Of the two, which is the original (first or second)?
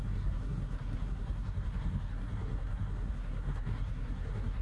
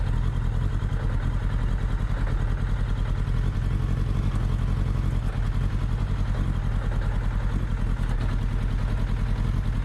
second